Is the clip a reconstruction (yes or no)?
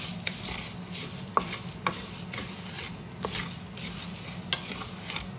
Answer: no